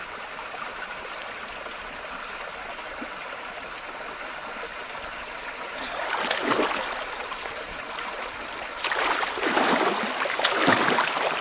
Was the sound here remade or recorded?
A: recorded